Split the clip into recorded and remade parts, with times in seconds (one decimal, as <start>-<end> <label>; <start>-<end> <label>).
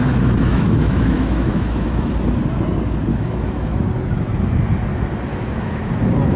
0.0-0.5 recorded; 0.5-2.1 remade; 2.1-3.1 recorded; 3.1-3.8 remade; 3.8-5.3 recorded; 5.3-5.9 remade; 5.9-6.4 recorded